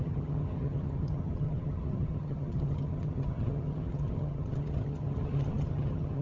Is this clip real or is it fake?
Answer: fake